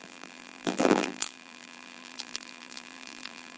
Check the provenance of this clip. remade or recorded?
remade